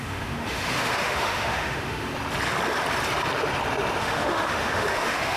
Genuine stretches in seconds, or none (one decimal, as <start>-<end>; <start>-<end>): 2.1-4.0